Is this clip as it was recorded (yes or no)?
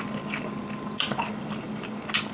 yes